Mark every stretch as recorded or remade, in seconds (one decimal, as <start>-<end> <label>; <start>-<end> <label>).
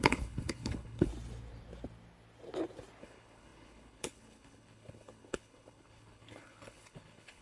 0.0-1.1 remade; 1.1-3.0 recorded; 3.0-7.4 remade